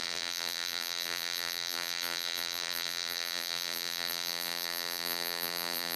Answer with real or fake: fake